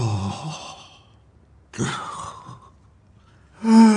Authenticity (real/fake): real